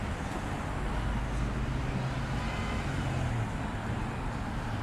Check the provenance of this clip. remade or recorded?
recorded